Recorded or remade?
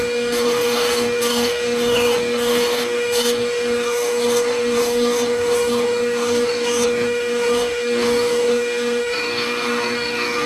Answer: remade